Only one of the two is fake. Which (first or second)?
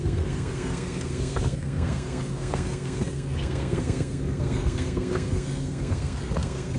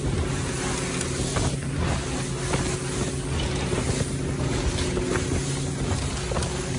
first